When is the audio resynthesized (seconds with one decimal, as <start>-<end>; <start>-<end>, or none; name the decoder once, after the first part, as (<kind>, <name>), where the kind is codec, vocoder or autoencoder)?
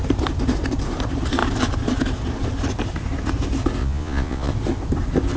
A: 3.8-4.5 (vocoder, Vocos)